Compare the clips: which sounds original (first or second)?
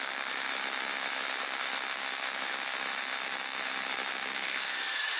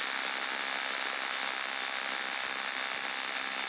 second